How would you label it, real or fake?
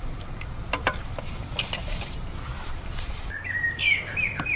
fake